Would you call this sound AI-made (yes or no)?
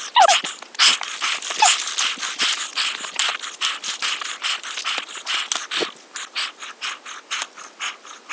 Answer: no